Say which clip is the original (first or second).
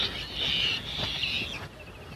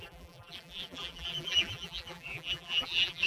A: first